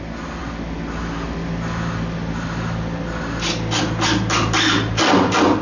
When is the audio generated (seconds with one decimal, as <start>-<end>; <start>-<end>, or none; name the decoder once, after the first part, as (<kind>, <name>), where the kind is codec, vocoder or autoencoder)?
none